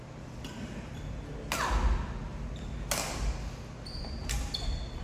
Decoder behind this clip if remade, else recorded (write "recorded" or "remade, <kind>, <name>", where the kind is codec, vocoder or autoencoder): recorded